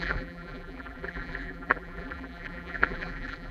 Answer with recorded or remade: remade